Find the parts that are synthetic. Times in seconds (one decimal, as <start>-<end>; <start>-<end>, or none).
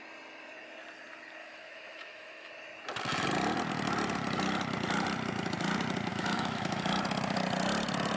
1.4-2.5; 6.1-6.8